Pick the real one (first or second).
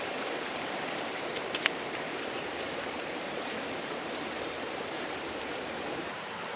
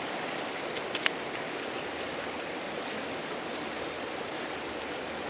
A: second